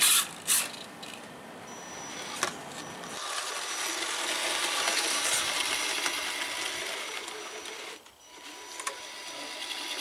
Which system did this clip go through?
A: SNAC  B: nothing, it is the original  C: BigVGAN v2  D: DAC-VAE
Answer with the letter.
B